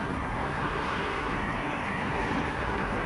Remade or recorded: remade